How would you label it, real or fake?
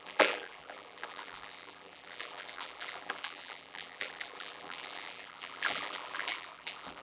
fake